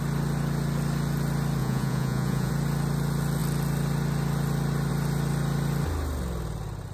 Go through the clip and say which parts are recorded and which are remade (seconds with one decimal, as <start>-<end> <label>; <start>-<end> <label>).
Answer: 0.0-1.6 recorded; 1.6-2.5 remade; 2.5-6.9 recorded